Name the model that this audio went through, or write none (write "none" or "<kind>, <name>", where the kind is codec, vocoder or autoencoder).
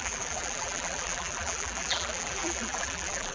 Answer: vocoder, BigVGAN v2